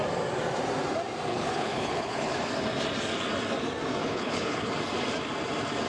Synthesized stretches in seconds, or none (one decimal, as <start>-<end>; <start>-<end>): 1.3-2.5; 4.0-4.7